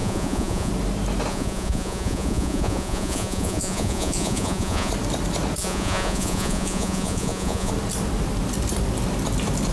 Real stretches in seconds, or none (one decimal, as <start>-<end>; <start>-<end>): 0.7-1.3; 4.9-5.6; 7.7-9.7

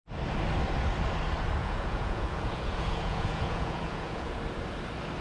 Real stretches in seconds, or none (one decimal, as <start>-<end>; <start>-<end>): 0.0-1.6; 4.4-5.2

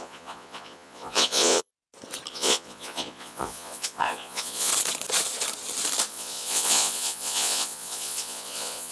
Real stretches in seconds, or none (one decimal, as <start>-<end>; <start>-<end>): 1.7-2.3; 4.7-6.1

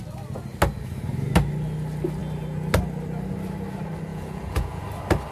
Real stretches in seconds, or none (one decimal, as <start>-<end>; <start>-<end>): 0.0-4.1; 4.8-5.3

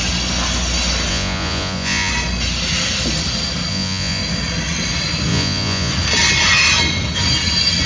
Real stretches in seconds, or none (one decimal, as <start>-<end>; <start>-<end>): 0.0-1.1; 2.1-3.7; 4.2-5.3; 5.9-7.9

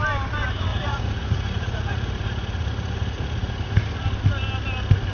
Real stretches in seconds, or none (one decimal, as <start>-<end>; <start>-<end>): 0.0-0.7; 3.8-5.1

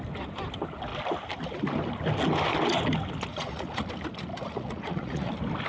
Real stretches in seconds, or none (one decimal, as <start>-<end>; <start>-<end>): 0.0-3.3; 3.9-4.3; 5.3-5.7